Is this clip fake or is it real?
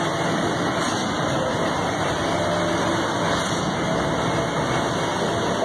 real